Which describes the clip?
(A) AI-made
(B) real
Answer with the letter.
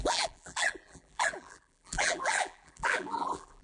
A